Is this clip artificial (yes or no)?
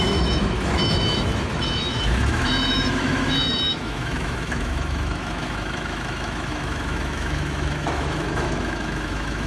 yes